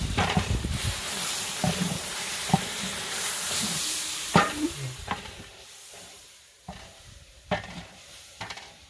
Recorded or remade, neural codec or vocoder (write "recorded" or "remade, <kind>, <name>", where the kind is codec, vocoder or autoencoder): remade, vocoder, BigVGAN v2